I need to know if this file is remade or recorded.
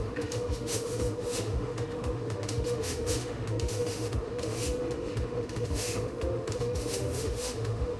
remade